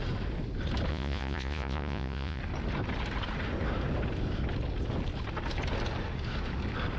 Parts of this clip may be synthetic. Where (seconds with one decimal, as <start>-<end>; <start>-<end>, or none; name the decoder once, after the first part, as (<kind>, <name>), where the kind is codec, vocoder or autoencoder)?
0.9-2.4 (vocoder, Vocos)